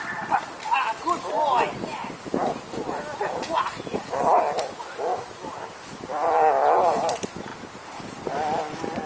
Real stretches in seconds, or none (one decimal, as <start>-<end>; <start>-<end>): 0.0-5.1; 5.7-9.1

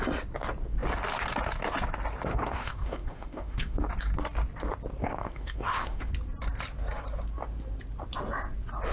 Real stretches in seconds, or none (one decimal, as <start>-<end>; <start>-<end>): 0.0-2.3; 3.9-5.0; 6.1-8.9

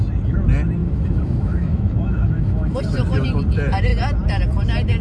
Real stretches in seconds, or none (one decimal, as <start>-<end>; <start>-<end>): 0.0-0.8; 2.8-5.0

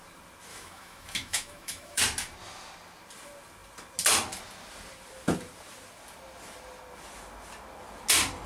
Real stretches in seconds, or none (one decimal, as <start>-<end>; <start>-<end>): 0.0-0.5; 2.0-8.5

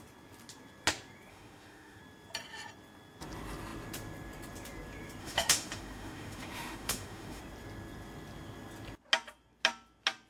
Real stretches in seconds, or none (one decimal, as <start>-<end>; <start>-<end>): 0.0-1.3; 2.0-5.2; 7.4-10.3

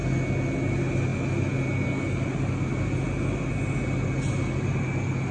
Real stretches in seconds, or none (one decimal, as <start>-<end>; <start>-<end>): 0.0-5.3